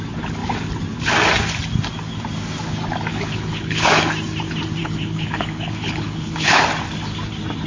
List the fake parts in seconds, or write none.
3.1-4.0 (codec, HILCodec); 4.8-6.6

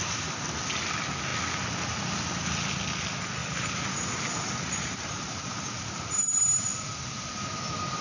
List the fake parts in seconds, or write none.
3.4-7.6 (vocoder, BigVGAN v2)

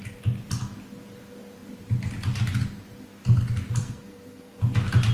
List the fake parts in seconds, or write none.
3.8-4.6 (codec, SNAC)